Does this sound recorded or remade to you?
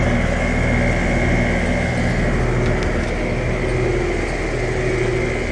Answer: recorded